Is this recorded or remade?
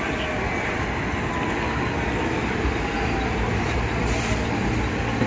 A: recorded